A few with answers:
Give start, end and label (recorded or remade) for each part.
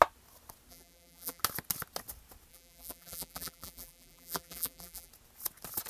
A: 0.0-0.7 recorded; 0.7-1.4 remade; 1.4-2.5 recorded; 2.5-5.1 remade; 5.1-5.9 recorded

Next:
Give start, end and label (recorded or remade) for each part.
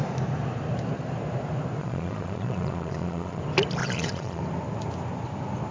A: 0.0-1.8 recorded; 1.8-3.4 remade; 3.4-3.8 recorded; 3.8-4.4 remade; 4.4-5.7 recorded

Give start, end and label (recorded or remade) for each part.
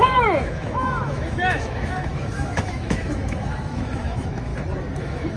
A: 0.0-4.5 remade; 4.5-5.0 recorded; 5.0-5.4 remade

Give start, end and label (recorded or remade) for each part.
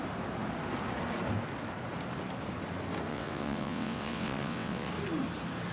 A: 0.0-3.1 recorded; 3.1-4.9 remade; 4.9-5.7 recorded